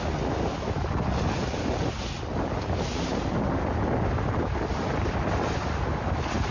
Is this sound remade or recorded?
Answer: recorded